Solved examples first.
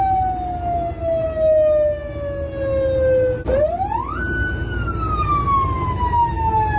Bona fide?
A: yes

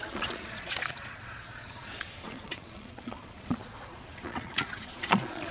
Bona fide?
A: no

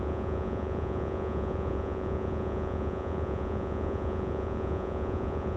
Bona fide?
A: no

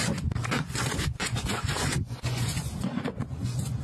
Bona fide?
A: no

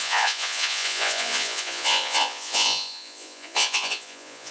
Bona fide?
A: no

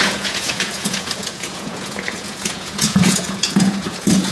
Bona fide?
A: no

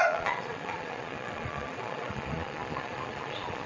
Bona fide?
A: no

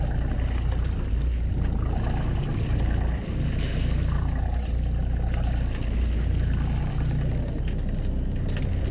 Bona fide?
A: yes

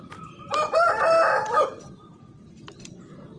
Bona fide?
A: yes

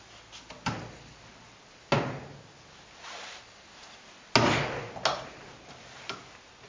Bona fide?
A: yes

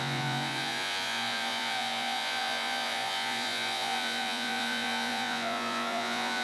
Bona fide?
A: no